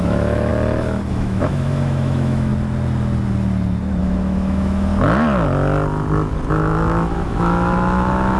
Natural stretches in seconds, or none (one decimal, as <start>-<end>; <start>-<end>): 0.5-1.1; 2.5-4.0; 4.9-6.5